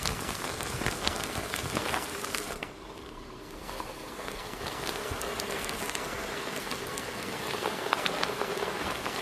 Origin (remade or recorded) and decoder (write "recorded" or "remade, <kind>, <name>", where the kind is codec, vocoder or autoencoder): remade, codec, SNAC